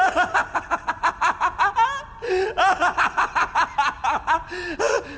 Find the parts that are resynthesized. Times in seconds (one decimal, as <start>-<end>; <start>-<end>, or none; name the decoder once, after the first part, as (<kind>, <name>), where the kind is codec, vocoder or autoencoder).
none